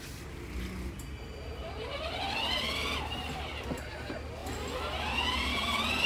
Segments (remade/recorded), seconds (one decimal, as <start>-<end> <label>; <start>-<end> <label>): 0.0-6.1 recorded